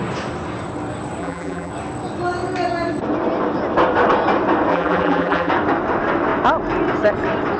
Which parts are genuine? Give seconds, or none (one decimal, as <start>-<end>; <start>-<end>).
0.0-1.2; 1.7-4.7; 5.5-7.6